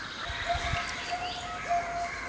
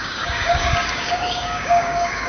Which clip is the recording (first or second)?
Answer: first